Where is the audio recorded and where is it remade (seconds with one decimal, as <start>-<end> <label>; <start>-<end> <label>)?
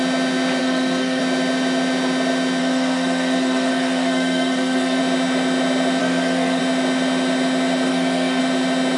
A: 0.0-0.6 recorded; 0.6-1.2 remade; 1.2-2.6 recorded; 2.6-5.0 remade; 5.0-6.0 recorded; 6.0-6.6 remade; 6.6-7.9 recorded; 7.9-8.4 remade; 8.4-9.0 recorded